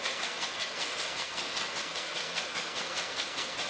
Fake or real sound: fake